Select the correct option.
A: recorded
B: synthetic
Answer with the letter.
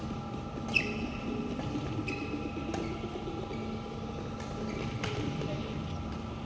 A